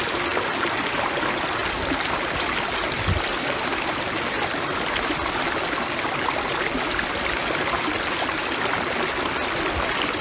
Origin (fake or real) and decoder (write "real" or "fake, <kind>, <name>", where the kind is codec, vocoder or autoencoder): real